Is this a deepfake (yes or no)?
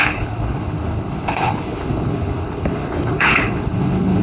yes